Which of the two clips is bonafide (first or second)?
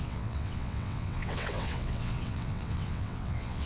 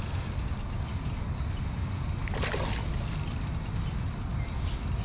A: second